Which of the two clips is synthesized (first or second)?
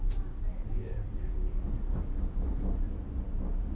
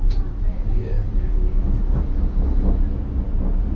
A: first